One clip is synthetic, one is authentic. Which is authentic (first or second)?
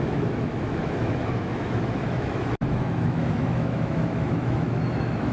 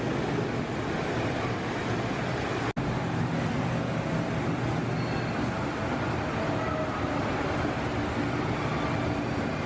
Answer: second